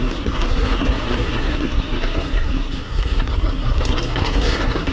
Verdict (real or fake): fake